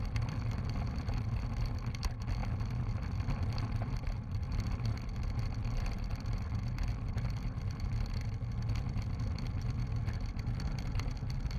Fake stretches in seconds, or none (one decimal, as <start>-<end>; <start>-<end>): 0.0-11.6